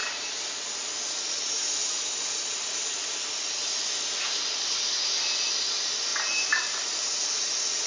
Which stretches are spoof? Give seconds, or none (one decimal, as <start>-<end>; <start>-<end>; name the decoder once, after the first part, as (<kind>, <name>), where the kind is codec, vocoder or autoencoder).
1.8-3.9 (vocoder, BigVGAN v2); 6.1-7.9